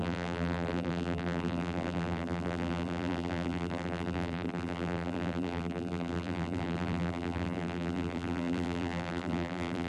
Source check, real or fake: fake